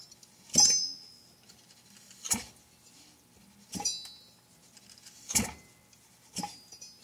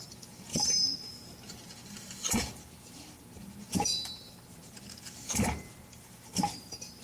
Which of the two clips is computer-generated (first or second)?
second